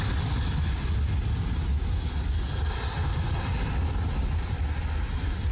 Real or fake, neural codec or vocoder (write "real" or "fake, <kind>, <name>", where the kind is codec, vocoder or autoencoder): real